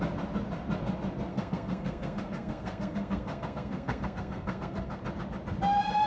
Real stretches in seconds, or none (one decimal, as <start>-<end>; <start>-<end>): 0.0-1.3; 5.0-6.1